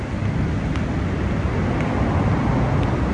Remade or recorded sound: recorded